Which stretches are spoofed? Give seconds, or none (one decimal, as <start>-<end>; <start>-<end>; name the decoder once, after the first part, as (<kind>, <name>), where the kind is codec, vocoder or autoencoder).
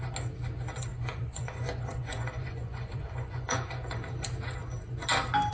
0.9-4.1 (vocoder, Vocos)